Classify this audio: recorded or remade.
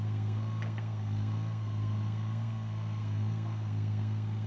remade